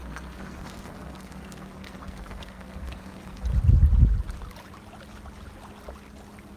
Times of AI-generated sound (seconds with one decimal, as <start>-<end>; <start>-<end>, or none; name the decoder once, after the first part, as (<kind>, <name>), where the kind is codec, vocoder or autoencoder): 0.0-3.4 (codec, SNAC)